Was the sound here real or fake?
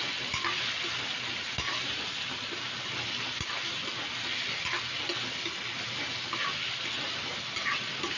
real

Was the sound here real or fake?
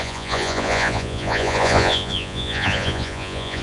fake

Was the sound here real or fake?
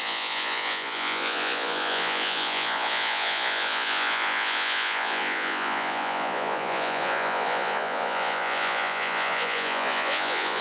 fake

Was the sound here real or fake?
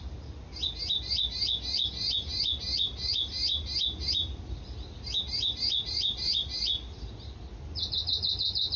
real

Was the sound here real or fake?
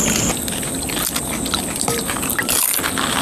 real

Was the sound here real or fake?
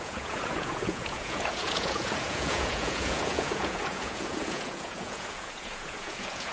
fake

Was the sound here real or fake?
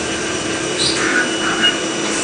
real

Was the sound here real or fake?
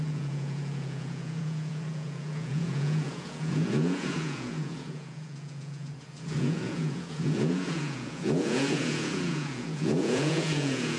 fake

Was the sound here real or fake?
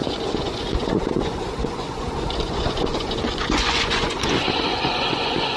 fake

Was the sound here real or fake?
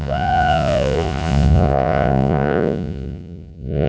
fake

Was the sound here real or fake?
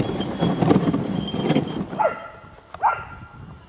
real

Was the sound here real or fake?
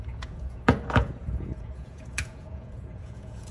fake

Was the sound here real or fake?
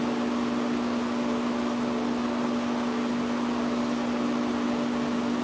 real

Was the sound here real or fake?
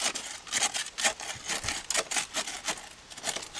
real